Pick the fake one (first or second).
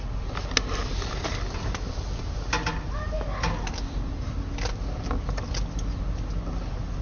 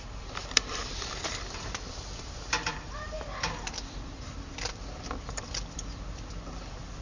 second